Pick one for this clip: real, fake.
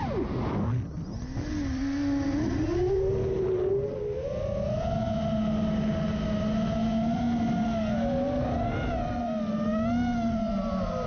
real